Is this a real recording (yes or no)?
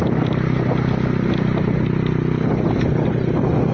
yes